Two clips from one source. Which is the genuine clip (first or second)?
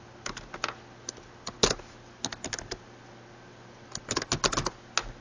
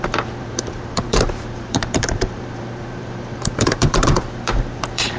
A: first